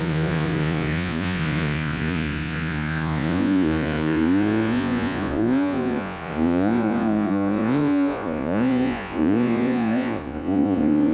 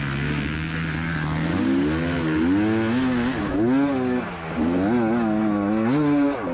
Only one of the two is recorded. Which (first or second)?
second